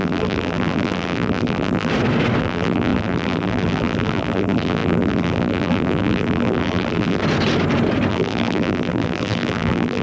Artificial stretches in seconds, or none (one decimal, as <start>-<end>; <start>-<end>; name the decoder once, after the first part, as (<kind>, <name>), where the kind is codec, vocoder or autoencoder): 0.0-1.9 (vocoder, BigVGAN v2); 2.4-7.2; 8.1-10.0